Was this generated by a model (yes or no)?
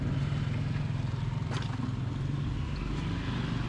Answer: no